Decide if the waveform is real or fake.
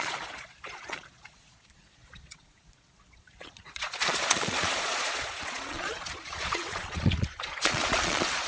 fake